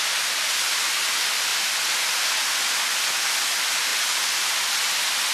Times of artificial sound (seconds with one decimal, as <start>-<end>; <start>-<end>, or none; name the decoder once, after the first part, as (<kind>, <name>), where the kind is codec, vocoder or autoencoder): none